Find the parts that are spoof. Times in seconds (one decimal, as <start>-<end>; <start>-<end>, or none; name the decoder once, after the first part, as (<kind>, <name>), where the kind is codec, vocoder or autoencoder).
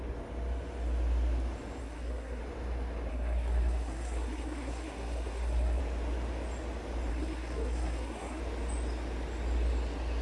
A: 1.8-2.4 (codec, SNAC); 3.1-5.8; 7.1-8.4